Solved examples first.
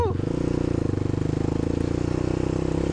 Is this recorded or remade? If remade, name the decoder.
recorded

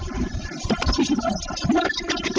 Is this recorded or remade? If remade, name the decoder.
remade, vocoder, BigVGAN v2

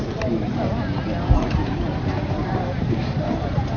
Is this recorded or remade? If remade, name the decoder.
remade, vocoder, BigVGAN v2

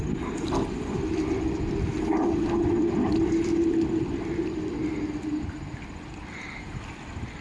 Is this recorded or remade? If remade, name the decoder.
recorded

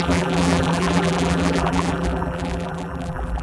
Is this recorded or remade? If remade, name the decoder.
remade, vocoder, BigVGAN v2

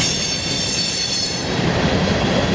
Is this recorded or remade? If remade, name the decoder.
remade, vocoder, BigVGAN v2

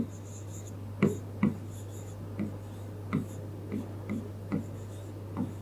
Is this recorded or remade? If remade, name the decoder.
recorded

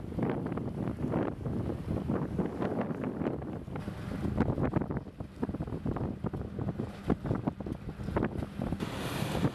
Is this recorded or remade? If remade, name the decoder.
recorded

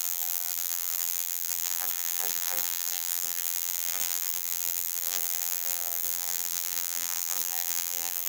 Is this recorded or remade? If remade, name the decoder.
remade, vocoder, BigVGAN v2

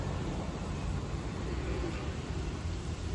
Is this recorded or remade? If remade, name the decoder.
remade, vocoder, BigVGAN v2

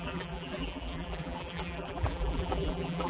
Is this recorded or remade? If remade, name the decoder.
remade, vocoder, BigVGAN v2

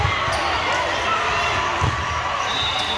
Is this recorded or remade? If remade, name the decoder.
recorded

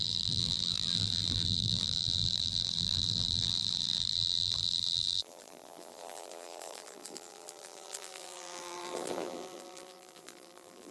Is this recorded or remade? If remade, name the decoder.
remade, vocoder, BigVGAN v2